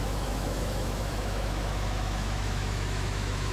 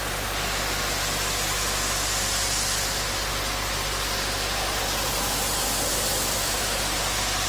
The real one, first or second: second